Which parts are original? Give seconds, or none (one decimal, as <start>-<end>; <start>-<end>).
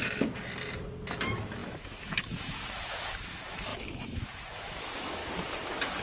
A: 0.0-1.2; 5.2-6.0